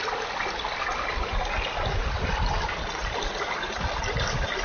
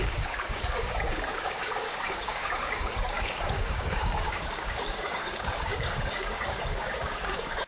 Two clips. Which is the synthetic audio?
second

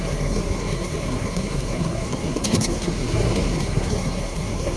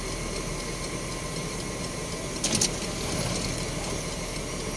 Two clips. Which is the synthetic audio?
first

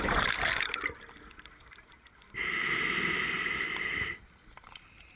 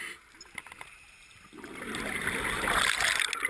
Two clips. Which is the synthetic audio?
first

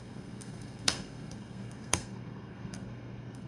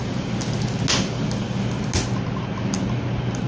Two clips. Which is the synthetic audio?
first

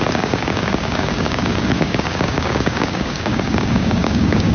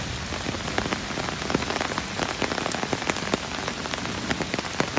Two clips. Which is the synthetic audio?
first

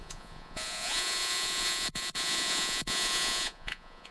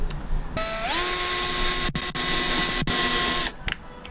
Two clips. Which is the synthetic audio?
first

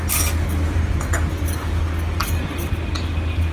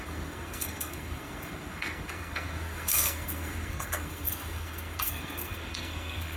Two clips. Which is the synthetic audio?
second